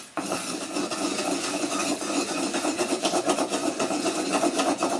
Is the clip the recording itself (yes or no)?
no